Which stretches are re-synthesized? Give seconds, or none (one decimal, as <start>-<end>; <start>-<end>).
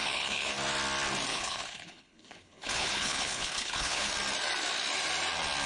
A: 0.0-0.5; 1.3-4.1